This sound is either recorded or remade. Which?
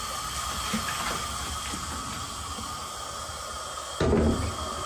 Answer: recorded